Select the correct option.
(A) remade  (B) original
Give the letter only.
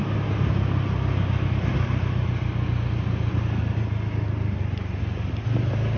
B